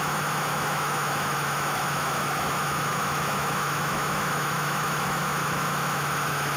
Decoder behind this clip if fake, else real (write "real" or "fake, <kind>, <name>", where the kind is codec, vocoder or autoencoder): fake, autoencoder, DAC-VAE